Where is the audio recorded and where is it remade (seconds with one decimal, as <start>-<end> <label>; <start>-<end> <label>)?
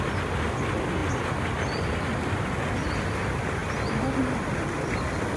0.0-5.4 recorded